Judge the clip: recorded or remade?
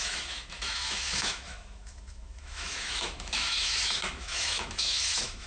remade